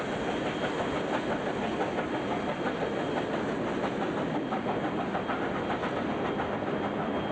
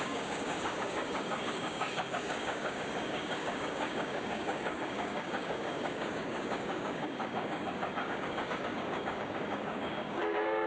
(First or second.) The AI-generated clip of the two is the second